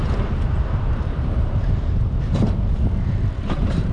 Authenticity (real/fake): fake